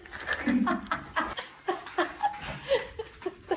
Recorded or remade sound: recorded